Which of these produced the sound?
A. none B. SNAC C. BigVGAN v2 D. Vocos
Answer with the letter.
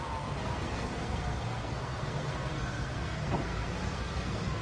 B